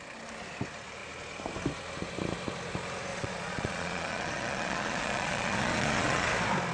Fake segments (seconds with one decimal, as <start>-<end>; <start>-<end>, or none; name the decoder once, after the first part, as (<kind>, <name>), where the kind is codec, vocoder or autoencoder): 3.1-6.3 (vocoder, Vocos)